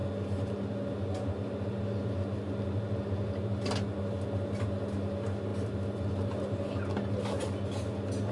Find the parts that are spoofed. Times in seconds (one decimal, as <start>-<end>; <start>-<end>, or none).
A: none